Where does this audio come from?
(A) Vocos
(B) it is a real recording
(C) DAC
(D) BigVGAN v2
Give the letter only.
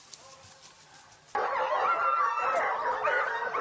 B